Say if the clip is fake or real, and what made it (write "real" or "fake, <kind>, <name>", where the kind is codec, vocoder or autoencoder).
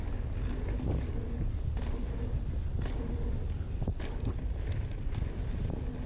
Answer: real